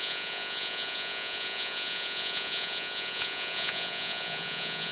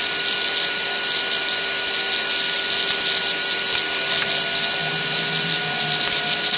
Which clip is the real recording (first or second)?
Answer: second